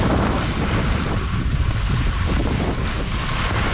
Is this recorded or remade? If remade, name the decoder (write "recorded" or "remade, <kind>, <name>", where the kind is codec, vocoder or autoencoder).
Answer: recorded